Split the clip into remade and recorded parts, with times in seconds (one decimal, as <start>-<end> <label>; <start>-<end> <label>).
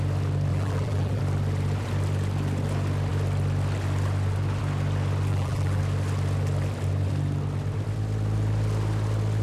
0.0-0.5 recorded; 0.5-1.2 remade; 1.2-5.3 recorded; 5.3-5.8 remade; 5.8-9.4 recorded